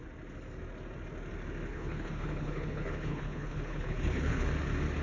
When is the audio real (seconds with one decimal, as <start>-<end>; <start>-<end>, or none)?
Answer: 0.0-1.7; 4.5-5.0